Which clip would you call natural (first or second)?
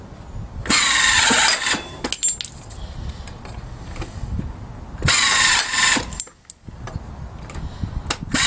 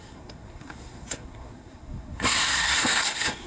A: first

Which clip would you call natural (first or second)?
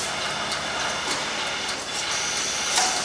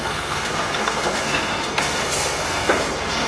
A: first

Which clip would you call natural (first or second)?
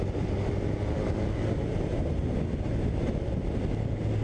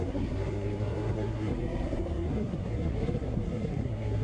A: first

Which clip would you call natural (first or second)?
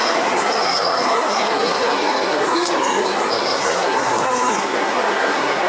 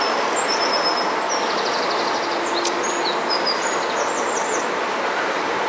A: second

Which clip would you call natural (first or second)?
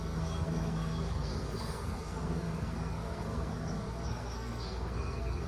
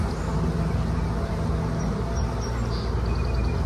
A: second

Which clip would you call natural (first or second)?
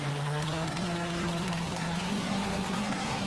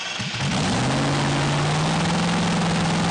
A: second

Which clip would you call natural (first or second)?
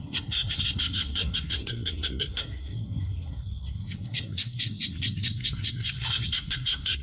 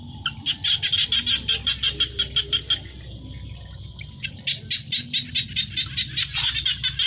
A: second